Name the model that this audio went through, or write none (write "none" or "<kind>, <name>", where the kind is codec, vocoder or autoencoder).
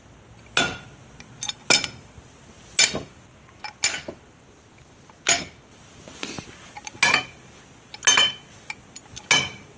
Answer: none